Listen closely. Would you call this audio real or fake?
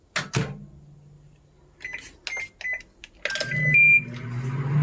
real